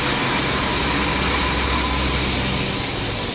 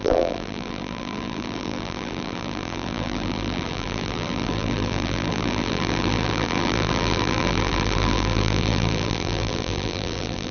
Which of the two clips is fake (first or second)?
second